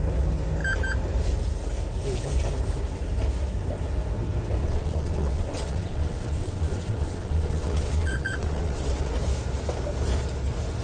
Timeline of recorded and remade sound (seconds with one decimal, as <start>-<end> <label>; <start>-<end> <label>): 0.0-4.6 recorded; 4.6-9.1 remade; 9.1-10.8 recorded